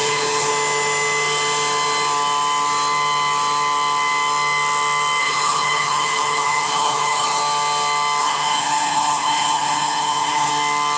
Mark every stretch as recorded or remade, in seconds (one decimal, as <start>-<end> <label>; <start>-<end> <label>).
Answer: 0.0-0.5 remade; 0.5-5.2 recorded; 5.2-7.4 remade; 7.4-8.2 recorded; 8.2-10.5 remade; 10.5-11.0 recorded